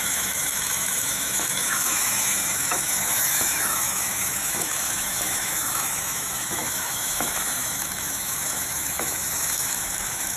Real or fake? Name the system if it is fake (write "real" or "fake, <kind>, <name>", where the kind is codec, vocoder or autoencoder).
fake, autoencoder, DAC-VAE